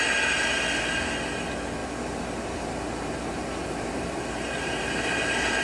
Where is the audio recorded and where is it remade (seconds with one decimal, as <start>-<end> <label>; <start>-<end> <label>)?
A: 0.0-1.8 recorded; 1.8-5.6 remade